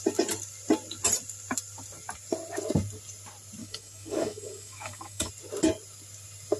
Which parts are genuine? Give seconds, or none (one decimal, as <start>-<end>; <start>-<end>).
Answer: 0.0-3.6; 5.3-6.6